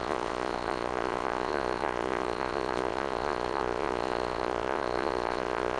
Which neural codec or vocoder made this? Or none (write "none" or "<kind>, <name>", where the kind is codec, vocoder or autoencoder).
vocoder, Vocos